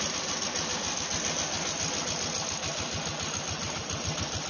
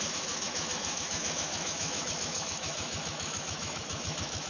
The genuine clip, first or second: first